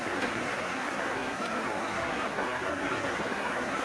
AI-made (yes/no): yes